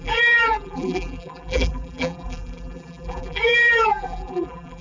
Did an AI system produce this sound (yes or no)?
yes